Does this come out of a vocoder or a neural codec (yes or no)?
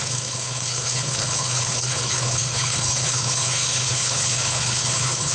yes